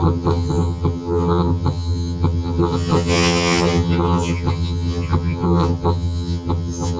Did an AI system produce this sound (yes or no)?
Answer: yes